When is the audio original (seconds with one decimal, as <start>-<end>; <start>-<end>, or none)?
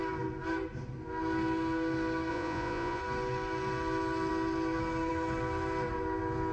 0.0-2.3; 3.0-6.5